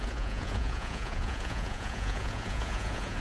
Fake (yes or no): yes